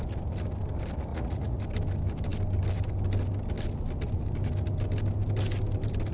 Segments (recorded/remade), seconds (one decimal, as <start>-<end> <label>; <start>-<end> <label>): 0.0-1.1 recorded; 1.1-1.6 remade; 1.6-6.1 recorded